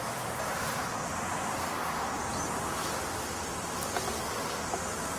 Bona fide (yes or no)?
yes